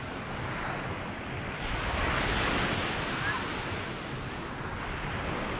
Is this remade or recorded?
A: recorded